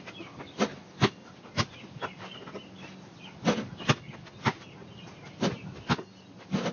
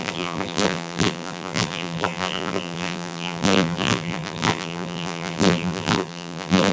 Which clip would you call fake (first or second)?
second